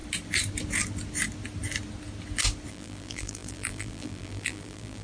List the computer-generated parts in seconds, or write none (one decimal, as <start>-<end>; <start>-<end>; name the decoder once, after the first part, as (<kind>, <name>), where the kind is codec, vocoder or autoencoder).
2.7-5.0 (vocoder, BigVGAN v2)